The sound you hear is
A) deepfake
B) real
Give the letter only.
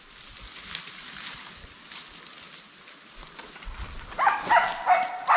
B